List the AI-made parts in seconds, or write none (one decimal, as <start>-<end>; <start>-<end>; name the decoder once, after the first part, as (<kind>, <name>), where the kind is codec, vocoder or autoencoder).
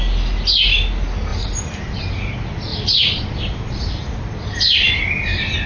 1.3-2.0 (vocoder, BigVGAN v2); 2.7-3.4